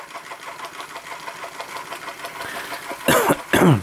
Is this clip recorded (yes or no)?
yes